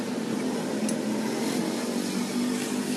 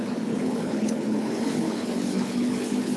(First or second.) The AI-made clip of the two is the second